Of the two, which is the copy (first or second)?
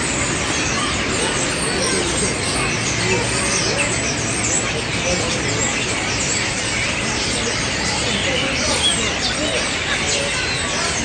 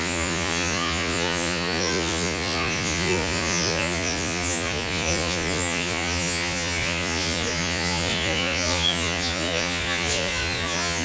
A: second